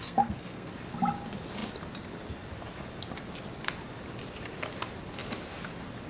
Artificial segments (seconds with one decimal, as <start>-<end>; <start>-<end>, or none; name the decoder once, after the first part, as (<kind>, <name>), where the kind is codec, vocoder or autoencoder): 0.0-0.7 (codec, SNAC)